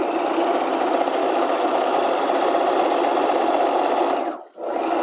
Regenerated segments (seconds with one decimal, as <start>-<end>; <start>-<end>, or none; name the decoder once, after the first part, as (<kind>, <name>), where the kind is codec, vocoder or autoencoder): 1.2-2.0 (autoencoder, DAC-VAE)